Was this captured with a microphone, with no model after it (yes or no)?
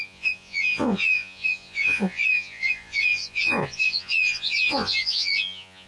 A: no